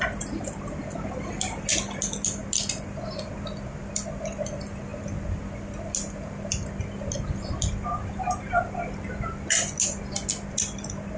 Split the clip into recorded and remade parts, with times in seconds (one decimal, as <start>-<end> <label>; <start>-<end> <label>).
0.0-11.2 recorded